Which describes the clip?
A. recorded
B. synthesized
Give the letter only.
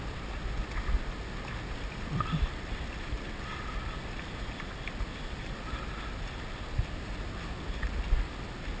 A